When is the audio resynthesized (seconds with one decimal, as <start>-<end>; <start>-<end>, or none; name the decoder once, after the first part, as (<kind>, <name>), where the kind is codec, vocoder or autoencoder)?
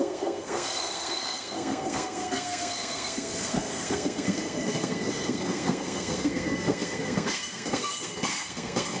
0.0-9.0 (codec, SNAC)